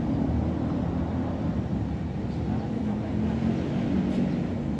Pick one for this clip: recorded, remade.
recorded